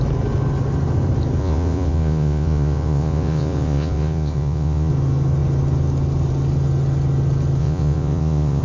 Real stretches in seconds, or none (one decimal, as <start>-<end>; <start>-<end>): 0.0-1.4; 4.9-7.6